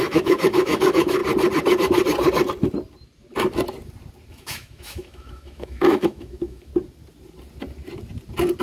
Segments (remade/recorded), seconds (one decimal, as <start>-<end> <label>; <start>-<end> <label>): 0.0-1.2 remade; 1.2-4.3 recorded; 4.3-6.7 remade; 6.7-8.6 recorded